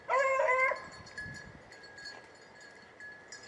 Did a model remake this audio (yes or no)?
no